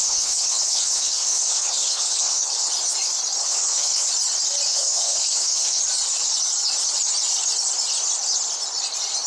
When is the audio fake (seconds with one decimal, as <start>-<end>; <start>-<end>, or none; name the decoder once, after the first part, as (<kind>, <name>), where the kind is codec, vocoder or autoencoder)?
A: 0.0-2.7 (codec, HILCodec); 3.4-4.1; 4.7-5.8